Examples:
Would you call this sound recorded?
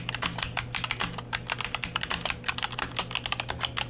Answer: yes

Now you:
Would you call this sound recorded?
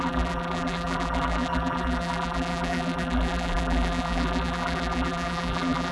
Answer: no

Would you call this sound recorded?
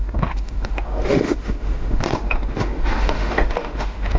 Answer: no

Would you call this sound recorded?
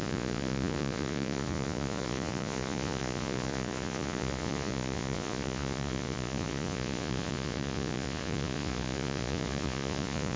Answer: no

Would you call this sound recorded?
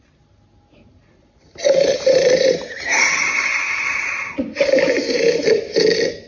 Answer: yes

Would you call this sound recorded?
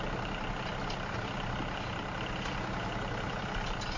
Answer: yes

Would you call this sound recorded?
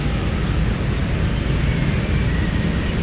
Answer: yes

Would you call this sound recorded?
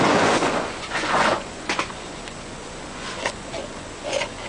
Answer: no